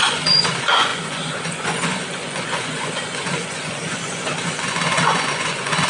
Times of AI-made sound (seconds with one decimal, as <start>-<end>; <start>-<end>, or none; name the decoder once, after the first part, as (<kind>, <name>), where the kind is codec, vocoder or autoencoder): 0.0-5.9 (vocoder, Vocos)